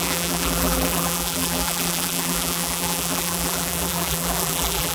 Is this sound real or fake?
fake